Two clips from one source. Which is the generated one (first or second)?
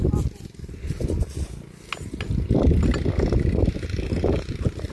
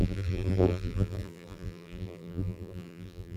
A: second